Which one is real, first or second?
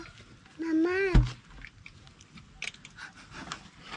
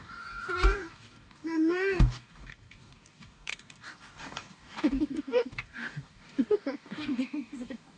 first